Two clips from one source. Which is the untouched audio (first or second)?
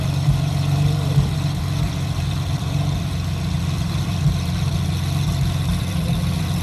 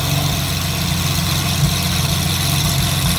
second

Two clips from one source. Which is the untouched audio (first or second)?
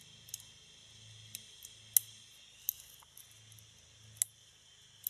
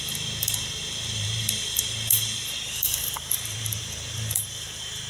first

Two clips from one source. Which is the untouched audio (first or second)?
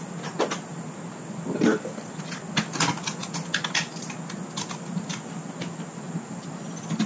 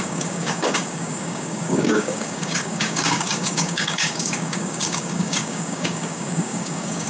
first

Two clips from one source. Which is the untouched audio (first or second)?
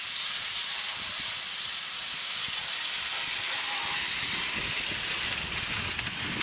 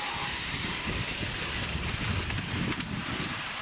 first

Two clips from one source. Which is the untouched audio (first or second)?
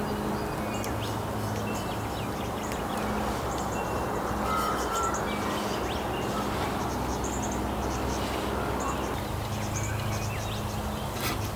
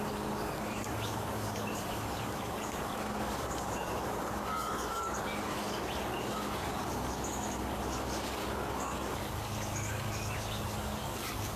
first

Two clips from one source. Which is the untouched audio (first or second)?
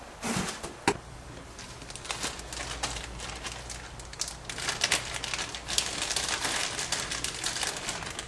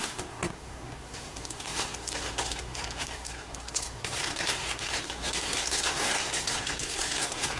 first